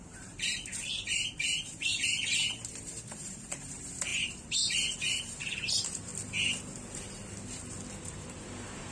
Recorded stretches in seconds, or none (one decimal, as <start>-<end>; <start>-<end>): 6.1-7.9